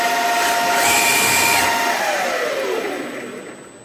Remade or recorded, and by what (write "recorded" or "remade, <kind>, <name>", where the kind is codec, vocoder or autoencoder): recorded